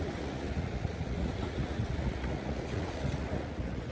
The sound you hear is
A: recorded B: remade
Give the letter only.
B